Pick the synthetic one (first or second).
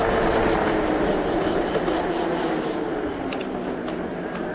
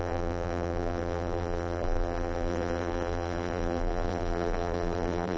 second